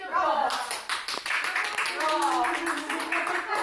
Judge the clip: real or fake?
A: real